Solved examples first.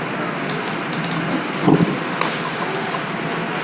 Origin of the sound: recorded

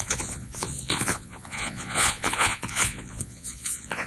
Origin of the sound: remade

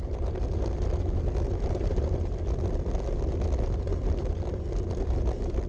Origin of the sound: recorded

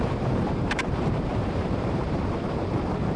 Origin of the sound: remade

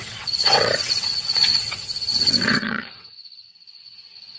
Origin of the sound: remade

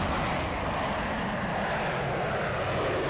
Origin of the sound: recorded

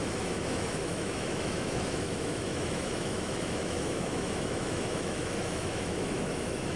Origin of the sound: remade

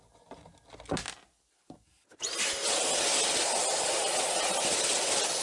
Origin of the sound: recorded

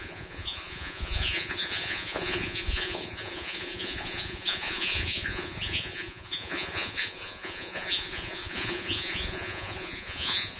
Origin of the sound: remade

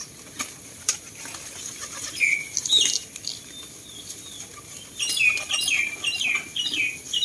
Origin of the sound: recorded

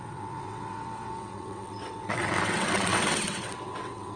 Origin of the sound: remade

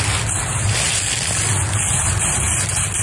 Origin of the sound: recorded